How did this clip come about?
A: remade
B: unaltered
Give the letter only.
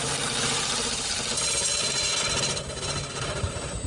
B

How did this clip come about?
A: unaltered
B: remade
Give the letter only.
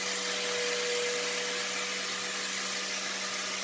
A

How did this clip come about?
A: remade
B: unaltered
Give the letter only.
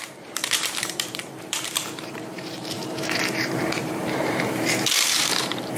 A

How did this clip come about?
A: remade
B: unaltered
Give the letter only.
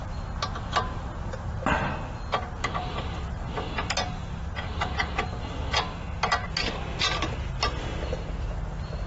B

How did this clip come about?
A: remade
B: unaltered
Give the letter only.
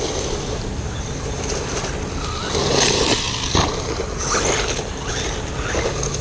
B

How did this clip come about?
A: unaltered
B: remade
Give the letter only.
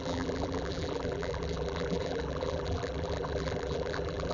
B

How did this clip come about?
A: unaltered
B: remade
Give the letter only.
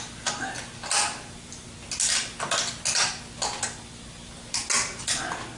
A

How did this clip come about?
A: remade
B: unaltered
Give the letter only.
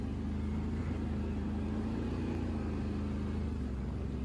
B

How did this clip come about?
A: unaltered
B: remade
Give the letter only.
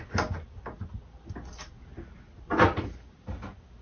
A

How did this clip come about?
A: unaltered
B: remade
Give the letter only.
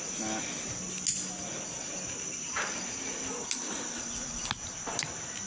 A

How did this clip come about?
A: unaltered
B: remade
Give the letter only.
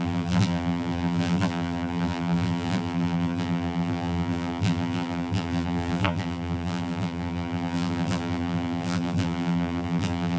B